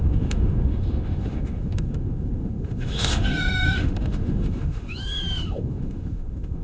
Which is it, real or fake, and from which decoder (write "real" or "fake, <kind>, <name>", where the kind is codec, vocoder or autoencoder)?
fake, autoencoder, DAC-VAE